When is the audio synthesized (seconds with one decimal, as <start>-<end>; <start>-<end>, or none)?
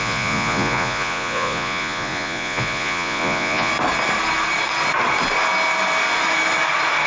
0.0-3.7